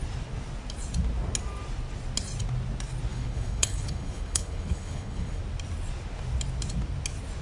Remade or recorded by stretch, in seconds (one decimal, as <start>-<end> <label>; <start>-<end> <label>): 0.0-3.1 recorded; 3.1-5.4 remade; 5.4-7.4 recorded